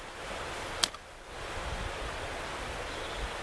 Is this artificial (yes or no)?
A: no